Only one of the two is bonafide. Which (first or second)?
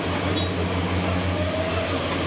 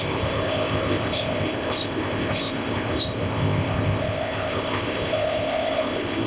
first